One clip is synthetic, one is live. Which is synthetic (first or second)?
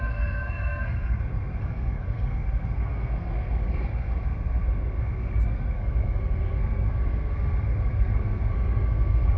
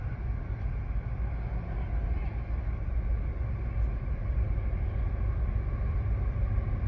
first